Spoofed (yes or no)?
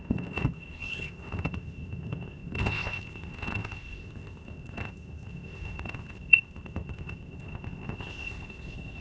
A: yes